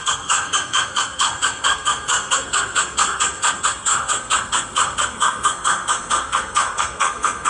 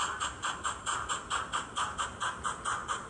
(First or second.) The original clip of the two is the second